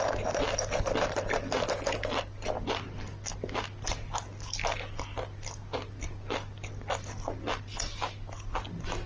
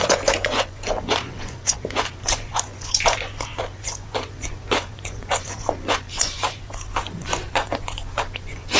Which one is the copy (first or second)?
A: second